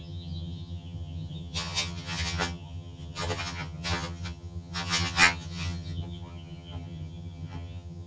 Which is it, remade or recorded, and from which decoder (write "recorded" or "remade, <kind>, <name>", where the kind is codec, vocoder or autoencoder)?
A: remade, vocoder, HiFi-GAN